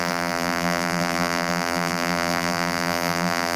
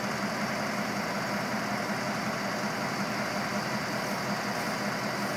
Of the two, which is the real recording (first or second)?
second